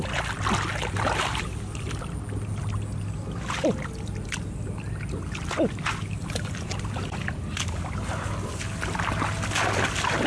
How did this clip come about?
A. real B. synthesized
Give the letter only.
A